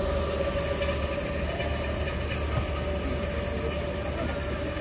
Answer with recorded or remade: recorded